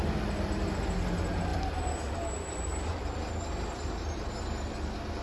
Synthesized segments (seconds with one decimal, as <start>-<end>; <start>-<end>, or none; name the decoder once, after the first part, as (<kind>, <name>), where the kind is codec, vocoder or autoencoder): none